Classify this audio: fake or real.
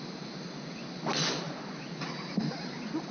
real